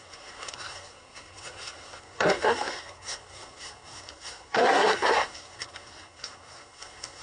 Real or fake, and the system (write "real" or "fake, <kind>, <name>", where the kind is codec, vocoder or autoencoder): fake, codec, SNAC